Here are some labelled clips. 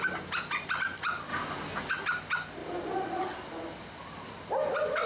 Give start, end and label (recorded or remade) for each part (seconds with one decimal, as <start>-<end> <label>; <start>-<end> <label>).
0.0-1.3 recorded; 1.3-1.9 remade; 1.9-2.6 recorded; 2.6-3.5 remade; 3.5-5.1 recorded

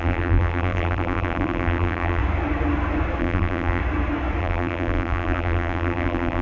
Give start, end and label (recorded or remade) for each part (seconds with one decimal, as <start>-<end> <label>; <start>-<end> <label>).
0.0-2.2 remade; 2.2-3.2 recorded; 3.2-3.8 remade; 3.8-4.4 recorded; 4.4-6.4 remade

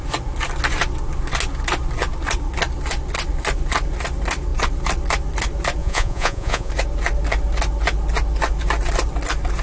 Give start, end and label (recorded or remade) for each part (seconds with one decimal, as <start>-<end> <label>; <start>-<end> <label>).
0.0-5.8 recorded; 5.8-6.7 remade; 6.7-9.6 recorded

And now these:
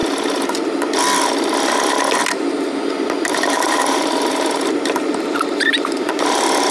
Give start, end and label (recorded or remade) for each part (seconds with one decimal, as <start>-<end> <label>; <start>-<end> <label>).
0.0-3.3 recorded; 3.3-6.7 remade